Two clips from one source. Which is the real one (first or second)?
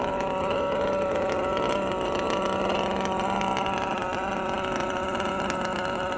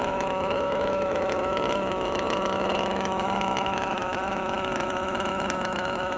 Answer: first